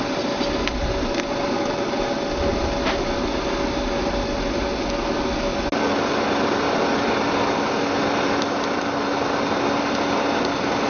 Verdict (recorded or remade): recorded